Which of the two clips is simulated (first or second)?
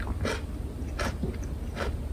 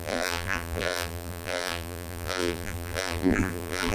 second